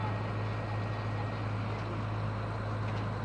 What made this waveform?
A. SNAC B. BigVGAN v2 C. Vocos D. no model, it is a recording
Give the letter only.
D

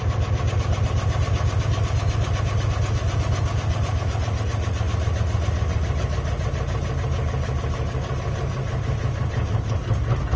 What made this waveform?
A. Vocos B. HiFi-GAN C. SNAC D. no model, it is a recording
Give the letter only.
D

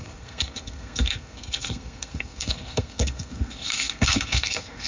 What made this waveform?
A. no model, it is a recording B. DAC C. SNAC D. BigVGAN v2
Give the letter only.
C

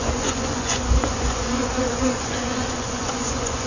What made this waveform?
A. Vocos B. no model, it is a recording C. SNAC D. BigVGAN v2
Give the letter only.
A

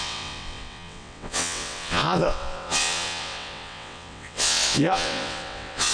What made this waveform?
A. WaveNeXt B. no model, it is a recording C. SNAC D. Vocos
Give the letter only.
A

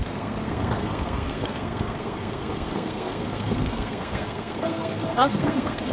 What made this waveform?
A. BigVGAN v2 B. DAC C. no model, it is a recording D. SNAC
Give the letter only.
D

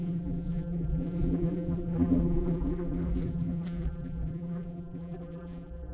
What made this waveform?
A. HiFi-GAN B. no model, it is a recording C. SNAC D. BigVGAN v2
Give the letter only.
D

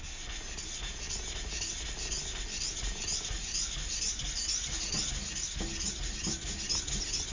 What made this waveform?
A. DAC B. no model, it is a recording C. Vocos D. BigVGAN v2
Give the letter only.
B